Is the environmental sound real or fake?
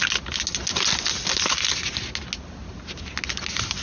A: real